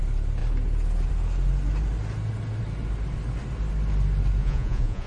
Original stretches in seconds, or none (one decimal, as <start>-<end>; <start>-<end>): 0.0-4.4

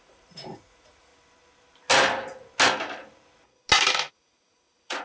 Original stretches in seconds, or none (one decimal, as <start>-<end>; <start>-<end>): 1.1-4.1